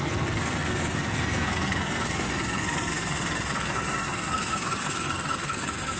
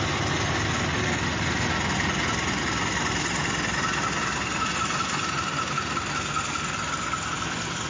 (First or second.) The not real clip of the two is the first